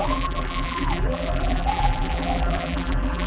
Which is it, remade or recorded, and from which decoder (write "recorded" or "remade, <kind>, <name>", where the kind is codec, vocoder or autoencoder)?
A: remade, vocoder, BigVGAN v2